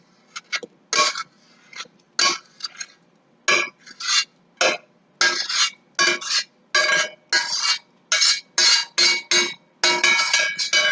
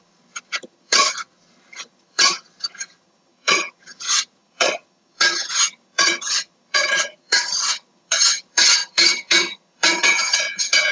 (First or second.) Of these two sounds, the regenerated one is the second